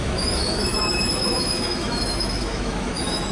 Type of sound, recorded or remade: remade